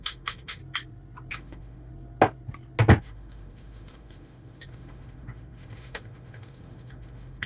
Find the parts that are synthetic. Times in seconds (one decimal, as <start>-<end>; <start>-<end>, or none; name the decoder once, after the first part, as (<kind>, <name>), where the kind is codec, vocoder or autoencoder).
0.0-0.6 (autoencoder, DAC-VAE); 1.3-1.9; 3.0-7.5